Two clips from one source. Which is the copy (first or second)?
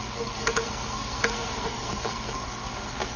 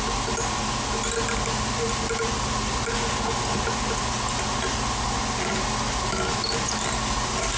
first